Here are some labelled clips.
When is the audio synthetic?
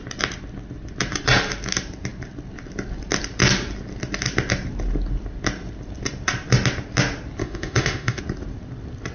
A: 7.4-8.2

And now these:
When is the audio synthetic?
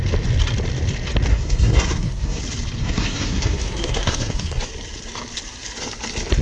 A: 1.3-2.4; 2.8-4.7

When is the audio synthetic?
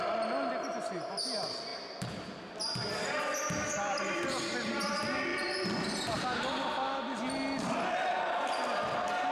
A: none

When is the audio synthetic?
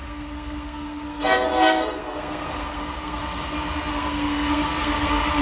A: 0.0-3.2; 3.9-5.4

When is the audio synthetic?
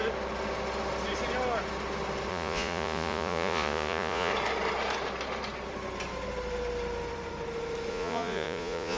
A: 2.3-4.3; 7.9-9.0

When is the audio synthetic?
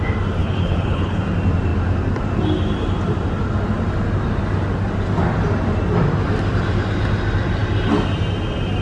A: 0.4-1.2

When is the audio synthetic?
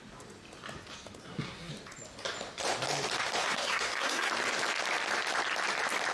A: 1.2-1.7; 3.4-4.3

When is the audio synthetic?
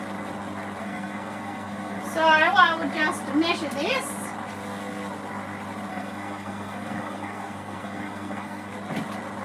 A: 0.8-2.0; 5.9-8.7